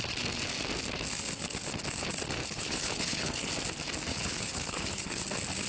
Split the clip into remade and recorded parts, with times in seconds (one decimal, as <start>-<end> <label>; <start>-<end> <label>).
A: 0.0-2.4 recorded; 2.4-3.5 remade; 3.5-4.1 recorded; 4.1-5.2 remade; 5.2-5.7 recorded